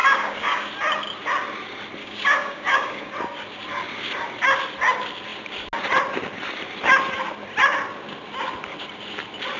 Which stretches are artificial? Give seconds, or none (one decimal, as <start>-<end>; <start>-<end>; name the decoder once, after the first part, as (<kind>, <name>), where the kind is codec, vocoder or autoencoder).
0.0-0.7 (codec, DAC); 2.0-3.1